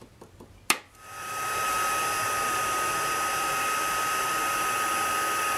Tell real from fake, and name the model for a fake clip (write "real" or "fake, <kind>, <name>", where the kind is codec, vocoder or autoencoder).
real